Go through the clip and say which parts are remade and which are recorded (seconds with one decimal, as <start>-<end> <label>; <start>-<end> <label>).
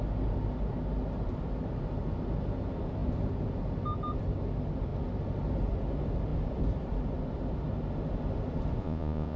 0.0-8.8 recorded; 8.8-9.4 remade